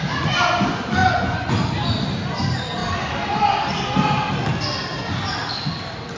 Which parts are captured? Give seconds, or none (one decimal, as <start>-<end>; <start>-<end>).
0.0-1.0; 1.5-6.2